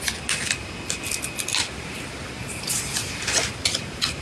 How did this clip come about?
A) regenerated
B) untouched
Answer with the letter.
B